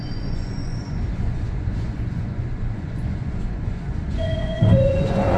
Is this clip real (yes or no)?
no